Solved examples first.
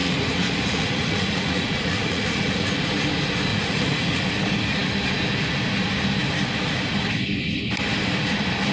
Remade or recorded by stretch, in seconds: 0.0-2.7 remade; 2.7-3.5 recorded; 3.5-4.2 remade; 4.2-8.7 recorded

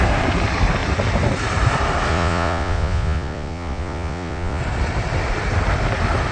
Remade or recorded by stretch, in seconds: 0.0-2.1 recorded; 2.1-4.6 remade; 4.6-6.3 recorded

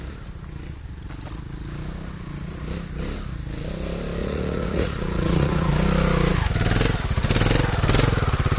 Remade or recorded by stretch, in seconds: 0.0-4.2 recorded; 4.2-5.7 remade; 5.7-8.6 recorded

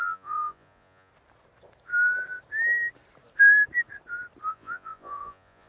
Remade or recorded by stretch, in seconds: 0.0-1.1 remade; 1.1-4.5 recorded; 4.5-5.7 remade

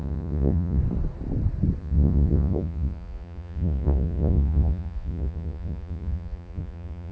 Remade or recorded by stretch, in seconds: 0.0-0.8 remade; 0.8-1.8 recorded; 1.8-7.1 remade

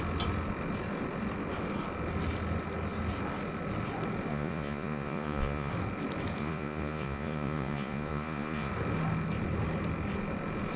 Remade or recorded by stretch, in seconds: 0.0-4.3 recorded; 4.3-5.7 remade; 5.7-6.4 recorded; 6.4-8.7 remade; 8.7-10.8 recorded